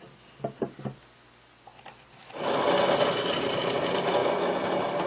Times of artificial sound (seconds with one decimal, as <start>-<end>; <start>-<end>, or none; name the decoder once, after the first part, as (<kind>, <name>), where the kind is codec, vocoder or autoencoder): none